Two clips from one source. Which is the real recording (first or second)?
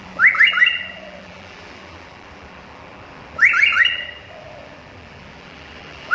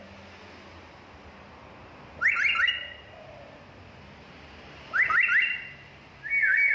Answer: second